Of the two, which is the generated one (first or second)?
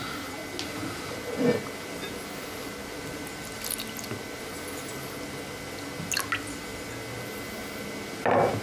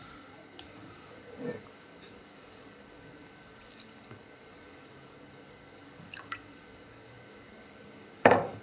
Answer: second